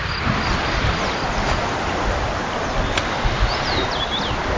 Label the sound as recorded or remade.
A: recorded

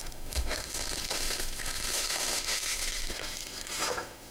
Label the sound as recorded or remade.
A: remade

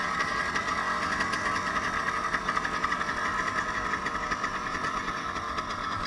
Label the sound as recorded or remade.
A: recorded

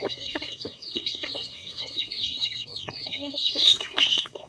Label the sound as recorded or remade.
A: remade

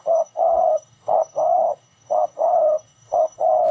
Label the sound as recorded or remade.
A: remade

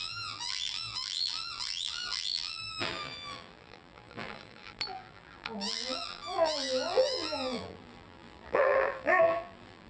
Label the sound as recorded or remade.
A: remade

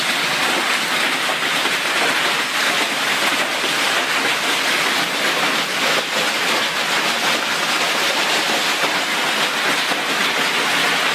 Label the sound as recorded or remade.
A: recorded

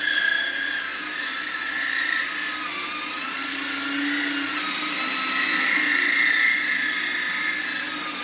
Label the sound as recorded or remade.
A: recorded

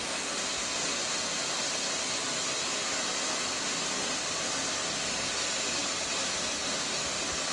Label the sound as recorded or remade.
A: recorded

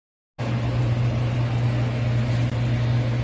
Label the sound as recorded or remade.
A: recorded